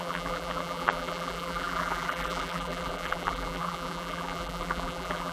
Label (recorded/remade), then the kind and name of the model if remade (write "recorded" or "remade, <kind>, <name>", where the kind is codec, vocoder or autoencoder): remade, vocoder, BigVGAN v2